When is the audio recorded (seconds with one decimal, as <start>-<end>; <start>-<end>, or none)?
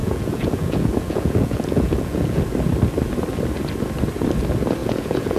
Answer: 2.4-4.8